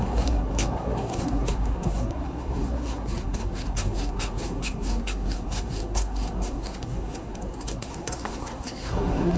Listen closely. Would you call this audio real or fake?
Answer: fake